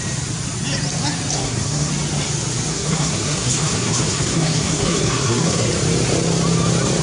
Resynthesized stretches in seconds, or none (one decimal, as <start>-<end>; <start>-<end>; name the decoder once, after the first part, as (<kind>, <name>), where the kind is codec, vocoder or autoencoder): 1.4-1.9 (codec, SNAC); 2.7-5.7

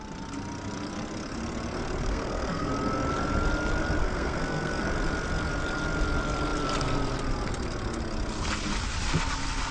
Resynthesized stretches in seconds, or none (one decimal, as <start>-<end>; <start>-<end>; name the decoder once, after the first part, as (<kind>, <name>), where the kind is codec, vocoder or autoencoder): 2.0-2.7 (codec, SNAC); 4.0-4.8

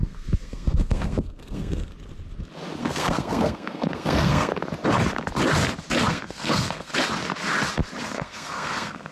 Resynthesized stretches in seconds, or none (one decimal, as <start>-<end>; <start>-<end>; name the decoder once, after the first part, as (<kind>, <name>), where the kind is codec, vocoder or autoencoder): 0.0-1.9 (codec, SNAC); 2.8-4.5; 6.1-6.9; 8.0-9.1

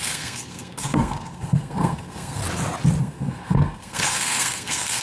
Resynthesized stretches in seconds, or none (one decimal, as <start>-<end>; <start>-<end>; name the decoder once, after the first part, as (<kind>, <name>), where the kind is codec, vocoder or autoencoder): 0.0-2.4 (codec, SNAC); 3.0-5.0

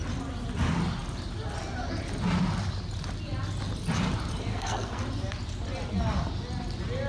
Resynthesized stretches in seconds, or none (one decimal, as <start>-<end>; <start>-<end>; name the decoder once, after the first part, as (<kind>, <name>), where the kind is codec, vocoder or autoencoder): 4.5-5.0 (codec, SNAC)

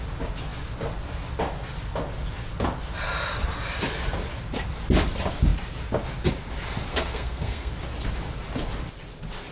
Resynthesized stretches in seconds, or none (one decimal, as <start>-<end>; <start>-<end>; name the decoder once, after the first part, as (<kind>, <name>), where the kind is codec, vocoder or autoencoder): 6.9-7.7 (codec, SNAC)

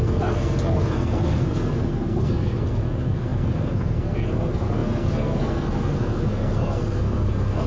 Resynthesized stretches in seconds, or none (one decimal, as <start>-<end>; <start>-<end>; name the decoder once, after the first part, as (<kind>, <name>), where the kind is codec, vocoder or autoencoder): 0.0-7.7 (codec, SNAC)